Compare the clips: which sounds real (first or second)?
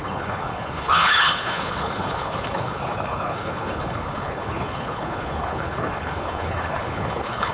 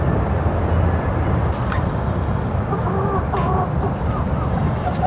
second